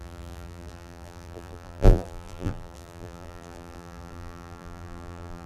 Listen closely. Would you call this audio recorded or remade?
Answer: remade